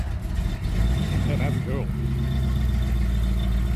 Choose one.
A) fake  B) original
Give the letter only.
B